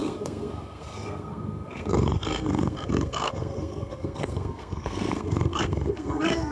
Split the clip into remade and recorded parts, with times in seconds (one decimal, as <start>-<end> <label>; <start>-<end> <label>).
0.0-6.5 remade